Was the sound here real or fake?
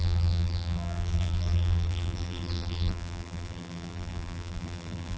fake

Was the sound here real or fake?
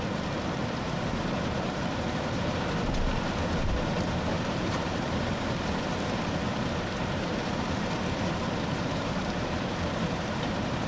fake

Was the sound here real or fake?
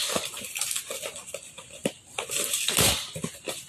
fake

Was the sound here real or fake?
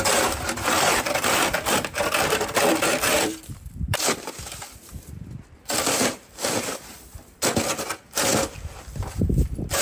fake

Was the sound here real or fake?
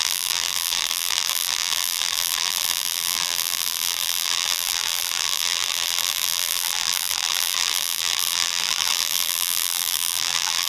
fake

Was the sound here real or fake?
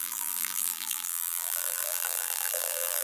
fake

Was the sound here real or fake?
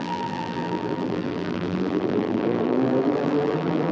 fake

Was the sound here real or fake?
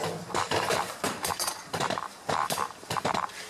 fake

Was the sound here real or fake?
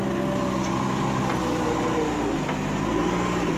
real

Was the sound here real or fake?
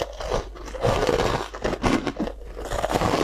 real